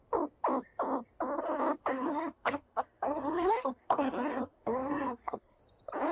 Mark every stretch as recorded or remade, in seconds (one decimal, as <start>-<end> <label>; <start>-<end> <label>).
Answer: 0.0-1.9 recorded; 1.9-5.6 remade; 5.6-6.1 recorded